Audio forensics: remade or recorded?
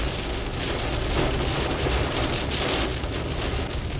recorded